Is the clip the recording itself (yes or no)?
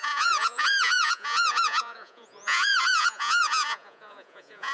no